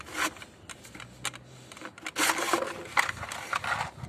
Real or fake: real